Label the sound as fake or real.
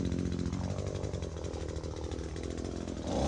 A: real